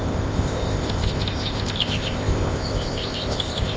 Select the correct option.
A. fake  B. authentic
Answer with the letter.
A